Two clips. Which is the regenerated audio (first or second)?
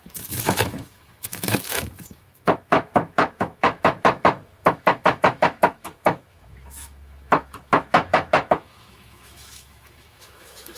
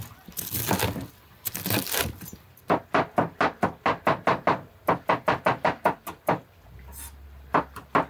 first